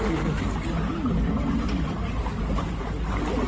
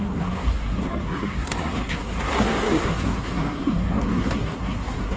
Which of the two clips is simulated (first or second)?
second